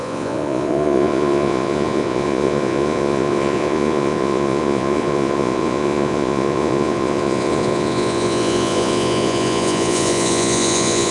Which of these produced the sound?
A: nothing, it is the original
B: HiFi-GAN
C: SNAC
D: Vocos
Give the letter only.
D